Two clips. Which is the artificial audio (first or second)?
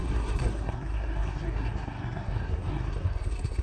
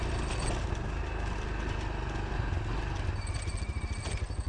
first